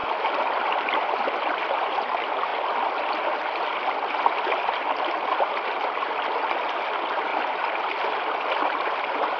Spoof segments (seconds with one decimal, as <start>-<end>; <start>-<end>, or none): 0.0-1.2